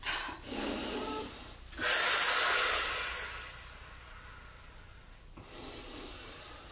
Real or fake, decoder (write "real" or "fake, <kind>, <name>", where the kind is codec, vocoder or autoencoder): real